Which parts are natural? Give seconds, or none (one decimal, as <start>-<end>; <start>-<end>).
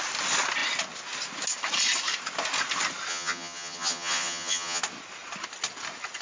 0.0-3.1; 4.8-6.2